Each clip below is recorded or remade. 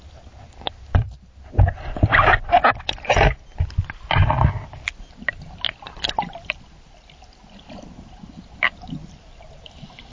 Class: recorded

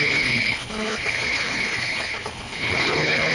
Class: remade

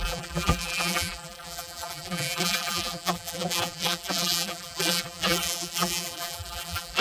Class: remade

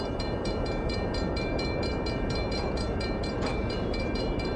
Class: remade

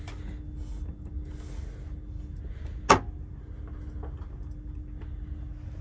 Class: recorded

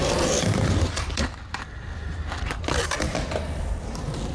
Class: remade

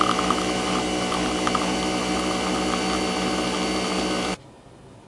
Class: recorded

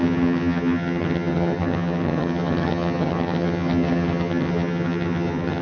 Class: remade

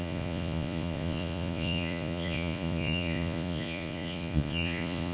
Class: remade